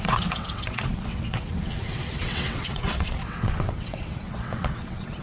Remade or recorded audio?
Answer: remade